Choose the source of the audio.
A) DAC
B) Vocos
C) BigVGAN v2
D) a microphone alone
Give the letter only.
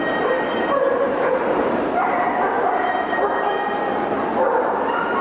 D